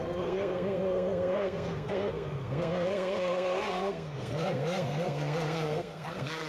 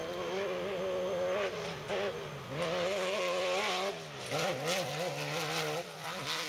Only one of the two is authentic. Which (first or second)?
second